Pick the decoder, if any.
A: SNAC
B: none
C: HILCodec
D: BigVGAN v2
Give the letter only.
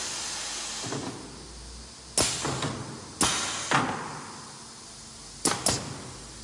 B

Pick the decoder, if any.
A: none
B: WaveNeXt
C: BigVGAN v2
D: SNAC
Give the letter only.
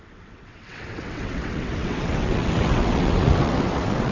B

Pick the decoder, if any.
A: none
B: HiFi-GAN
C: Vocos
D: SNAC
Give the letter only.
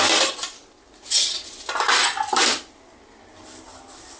A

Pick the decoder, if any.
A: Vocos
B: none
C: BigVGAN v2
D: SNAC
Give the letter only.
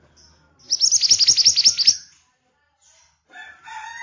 B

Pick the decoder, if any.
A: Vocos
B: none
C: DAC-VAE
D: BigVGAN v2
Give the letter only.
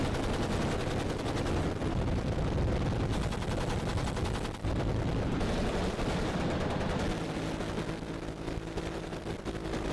B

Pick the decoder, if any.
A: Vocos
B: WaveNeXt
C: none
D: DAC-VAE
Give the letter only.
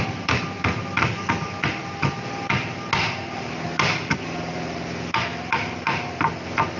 C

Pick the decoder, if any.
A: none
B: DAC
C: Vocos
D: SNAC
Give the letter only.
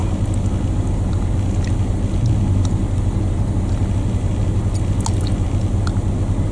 A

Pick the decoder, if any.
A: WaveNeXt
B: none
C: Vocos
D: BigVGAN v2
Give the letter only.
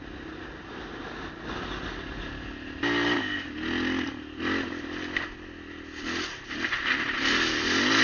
B